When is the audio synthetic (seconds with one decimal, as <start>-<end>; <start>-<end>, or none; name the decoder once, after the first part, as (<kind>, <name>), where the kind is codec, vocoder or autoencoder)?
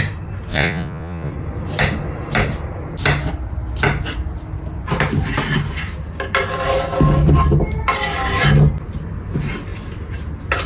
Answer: 0.5-1.3 (vocoder, Vocos)